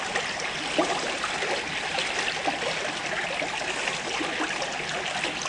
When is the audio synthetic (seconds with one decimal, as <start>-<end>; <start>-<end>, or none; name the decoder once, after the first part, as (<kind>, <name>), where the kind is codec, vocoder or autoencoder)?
none